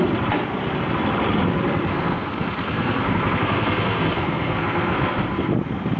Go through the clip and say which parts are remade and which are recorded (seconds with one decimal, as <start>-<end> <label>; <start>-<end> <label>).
0.0-1.9 recorded; 1.9-5.5 remade; 5.5-6.0 recorded